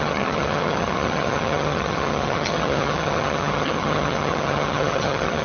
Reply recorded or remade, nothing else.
remade